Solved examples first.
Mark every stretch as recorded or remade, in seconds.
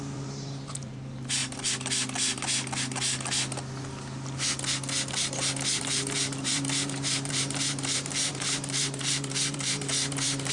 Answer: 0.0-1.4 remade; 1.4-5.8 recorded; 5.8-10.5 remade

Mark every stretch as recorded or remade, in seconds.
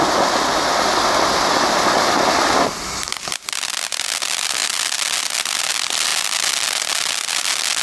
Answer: 0.0-2.7 recorded; 2.7-3.5 remade; 3.5-7.8 recorded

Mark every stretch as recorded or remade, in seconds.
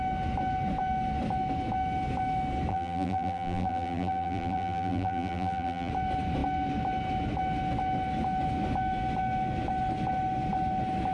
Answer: 0.0-2.7 recorded; 2.7-5.9 remade; 5.9-11.1 recorded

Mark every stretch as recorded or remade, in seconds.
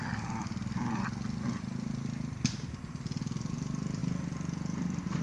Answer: 0.0-5.2 recorded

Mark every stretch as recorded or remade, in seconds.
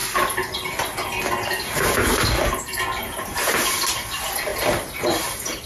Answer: 0.0-5.7 recorded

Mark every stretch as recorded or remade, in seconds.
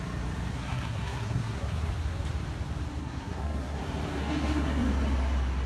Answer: 0.0-0.5 recorded; 0.5-1.9 remade; 1.9-3.0 recorded; 3.0-3.8 remade; 3.8-4.2 recorded; 4.2-4.9 remade; 4.9-5.7 recorded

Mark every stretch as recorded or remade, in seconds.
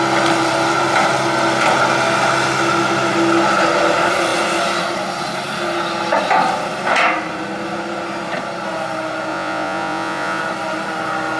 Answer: 0.0-9.3 recorded; 9.3-10.4 remade; 10.4-11.4 recorded